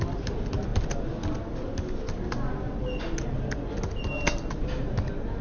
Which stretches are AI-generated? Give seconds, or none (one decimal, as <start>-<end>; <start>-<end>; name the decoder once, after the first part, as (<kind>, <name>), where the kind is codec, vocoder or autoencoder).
none